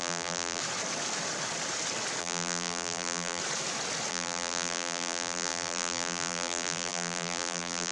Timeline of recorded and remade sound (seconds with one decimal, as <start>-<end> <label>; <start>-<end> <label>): 0.0-0.6 remade; 0.6-2.2 recorded; 2.2-3.4 remade; 3.4-4.1 recorded; 4.1-7.9 remade